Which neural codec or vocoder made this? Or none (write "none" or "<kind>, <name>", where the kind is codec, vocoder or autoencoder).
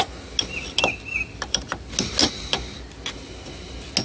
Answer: none